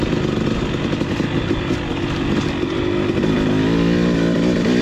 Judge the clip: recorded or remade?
recorded